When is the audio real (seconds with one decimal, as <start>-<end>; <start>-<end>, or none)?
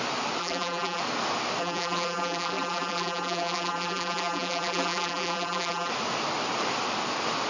0.0-0.4; 1.0-1.6; 5.9-7.5